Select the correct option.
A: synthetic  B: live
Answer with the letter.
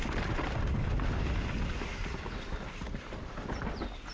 B